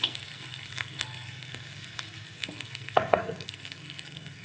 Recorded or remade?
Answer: remade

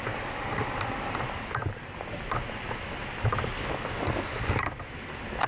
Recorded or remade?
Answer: recorded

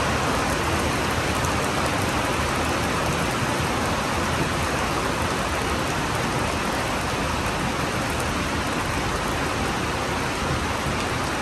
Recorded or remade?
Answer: recorded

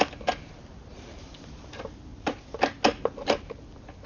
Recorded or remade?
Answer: recorded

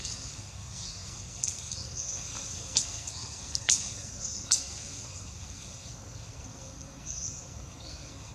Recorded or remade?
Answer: remade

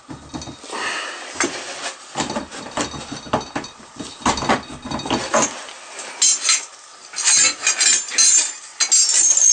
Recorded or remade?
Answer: recorded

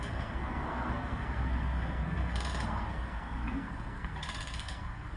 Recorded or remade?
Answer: remade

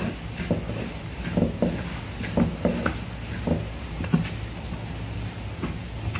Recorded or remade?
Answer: recorded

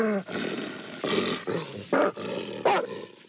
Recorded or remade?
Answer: recorded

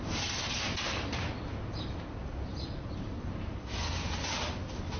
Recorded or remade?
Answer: recorded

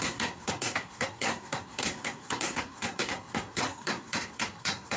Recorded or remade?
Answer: remade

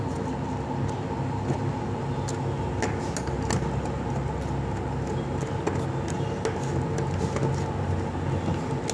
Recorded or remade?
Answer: recorded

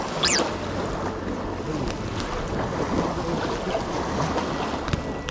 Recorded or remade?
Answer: recorded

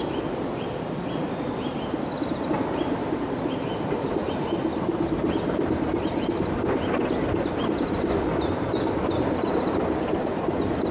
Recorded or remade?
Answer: recorded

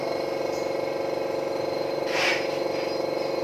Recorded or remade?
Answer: recorded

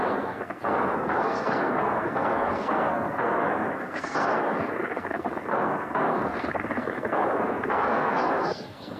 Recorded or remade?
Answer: remade